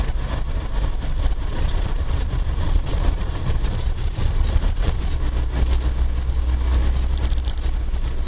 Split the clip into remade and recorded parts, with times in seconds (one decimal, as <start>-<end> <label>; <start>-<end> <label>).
0.0-1.4 recorded; 1.4-5.2 remade; 5.2-8.3 recorded